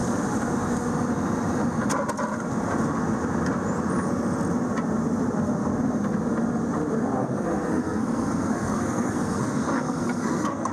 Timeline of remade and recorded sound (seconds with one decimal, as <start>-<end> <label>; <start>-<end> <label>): 0.0-7.2 recorded; 7.2-10.7 remade